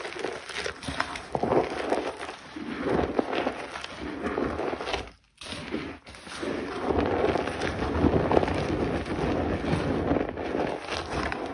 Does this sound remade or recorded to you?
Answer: recorded